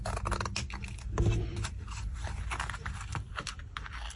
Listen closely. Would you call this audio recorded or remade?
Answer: recorded